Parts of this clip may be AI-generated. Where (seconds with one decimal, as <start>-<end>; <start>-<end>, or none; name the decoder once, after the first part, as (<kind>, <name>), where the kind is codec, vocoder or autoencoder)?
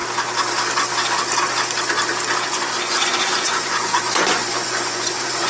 2.5-5.5 (vocoder, Vocos)